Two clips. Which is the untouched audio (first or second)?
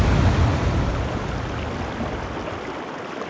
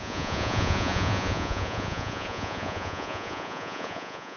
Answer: first